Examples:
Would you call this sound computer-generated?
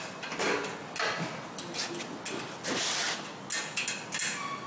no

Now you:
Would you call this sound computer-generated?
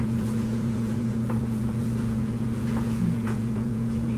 yes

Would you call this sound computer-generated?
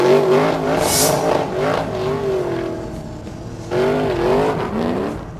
no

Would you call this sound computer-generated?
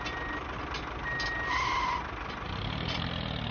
no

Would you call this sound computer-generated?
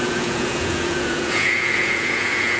yes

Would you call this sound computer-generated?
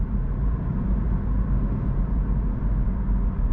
no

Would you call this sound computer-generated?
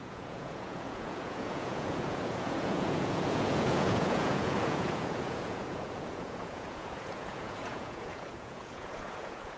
yes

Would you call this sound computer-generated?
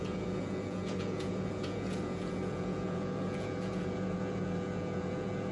yes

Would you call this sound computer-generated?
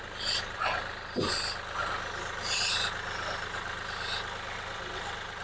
no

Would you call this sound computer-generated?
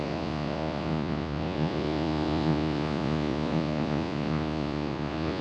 yes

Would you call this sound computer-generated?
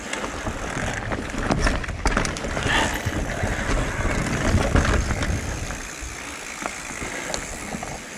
no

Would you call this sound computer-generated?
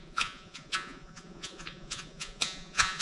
yes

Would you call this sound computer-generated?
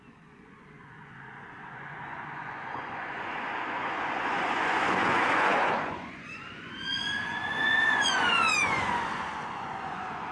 yes